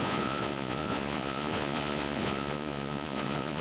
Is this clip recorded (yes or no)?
no